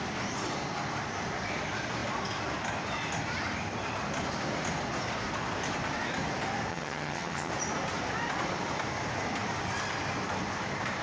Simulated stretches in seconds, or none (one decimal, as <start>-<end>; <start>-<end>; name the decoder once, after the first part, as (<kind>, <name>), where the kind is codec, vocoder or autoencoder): 6.7-7.5 (vocoder, HiFi-GAN)